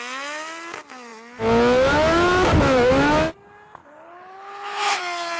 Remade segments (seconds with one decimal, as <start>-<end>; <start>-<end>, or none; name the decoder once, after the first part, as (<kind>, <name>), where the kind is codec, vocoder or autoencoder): 3.8-5.0 (codec, HILCodec)

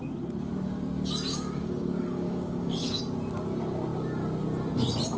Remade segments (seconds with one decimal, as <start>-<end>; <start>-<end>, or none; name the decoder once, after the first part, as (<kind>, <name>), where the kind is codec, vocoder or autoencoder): 1.3-3.0 (codec, DAC)

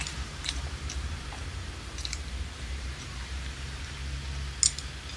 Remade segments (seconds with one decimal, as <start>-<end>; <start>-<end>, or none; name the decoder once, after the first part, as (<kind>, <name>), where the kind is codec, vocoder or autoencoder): 0.0-4.0 (vocoder, BigVGAN v2)

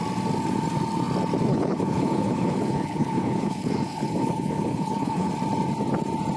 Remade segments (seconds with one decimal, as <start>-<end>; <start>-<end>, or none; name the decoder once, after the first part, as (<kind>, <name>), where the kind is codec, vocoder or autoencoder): 1.5-5.3 (codec, HILCodec)

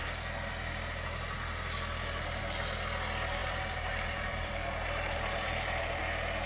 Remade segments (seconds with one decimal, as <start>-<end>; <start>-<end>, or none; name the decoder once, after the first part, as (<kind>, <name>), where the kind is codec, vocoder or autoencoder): 3.4-6.0 (vocoder, BigVGAN v2)

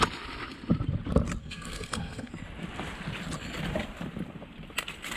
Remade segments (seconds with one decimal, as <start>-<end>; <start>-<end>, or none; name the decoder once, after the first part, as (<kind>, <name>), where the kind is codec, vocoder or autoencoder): 1.4-2.3 (codec, SNAC)

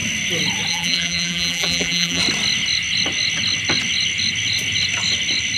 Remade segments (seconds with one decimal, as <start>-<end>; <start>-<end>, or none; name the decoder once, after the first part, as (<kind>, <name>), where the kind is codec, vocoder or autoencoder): 0.7-2.2 (vocoder, BigVGAN v2)

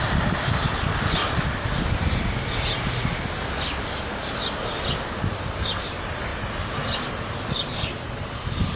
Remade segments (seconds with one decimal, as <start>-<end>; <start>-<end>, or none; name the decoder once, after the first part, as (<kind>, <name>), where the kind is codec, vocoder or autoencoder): 0.0-1.2 (vocoder, BigVGAN v2); 1.8-6.3; 7.0-8.8